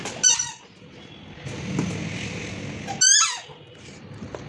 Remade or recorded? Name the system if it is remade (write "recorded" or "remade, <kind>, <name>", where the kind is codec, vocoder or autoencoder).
recorded